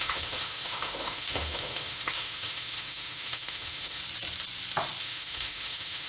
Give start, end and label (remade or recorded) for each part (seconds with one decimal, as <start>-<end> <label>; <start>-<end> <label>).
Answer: 0.0-4.0 remade; 4.0-5.0 recorded; 5.0-6.1 remade